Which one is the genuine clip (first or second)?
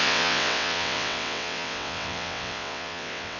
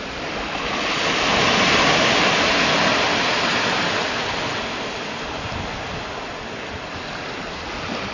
second